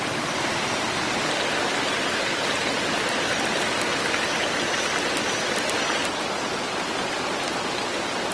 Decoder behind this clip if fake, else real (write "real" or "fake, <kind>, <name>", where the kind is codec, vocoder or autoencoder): real